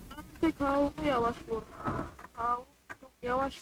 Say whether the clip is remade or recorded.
recorded